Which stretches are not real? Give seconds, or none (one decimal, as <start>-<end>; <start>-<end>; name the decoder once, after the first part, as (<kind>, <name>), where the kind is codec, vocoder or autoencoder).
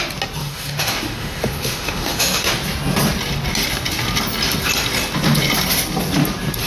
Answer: 0.4-2.5 (autoencoder, DAC-VAE)